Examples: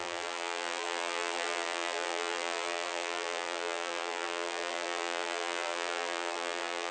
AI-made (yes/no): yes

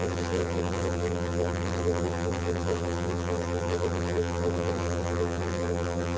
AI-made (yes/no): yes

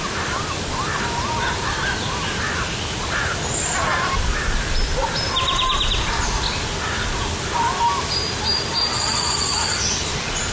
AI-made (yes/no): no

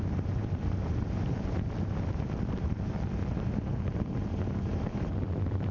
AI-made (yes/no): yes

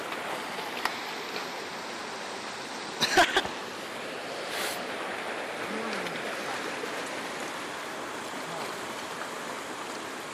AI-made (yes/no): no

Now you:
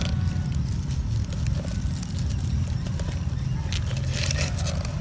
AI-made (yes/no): no